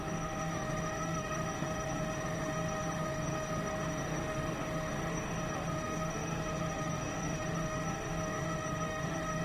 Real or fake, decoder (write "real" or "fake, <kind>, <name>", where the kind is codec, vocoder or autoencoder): fake, autoencoder, DAC-VAE